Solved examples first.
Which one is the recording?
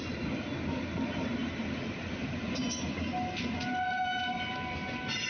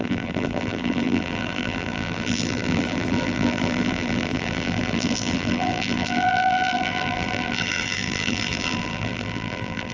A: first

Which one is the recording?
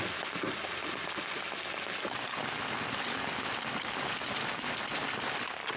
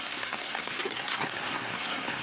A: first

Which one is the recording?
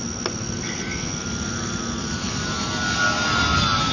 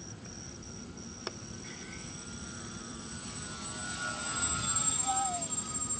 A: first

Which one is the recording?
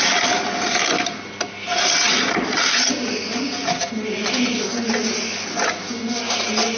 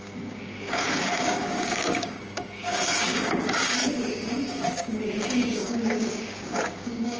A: first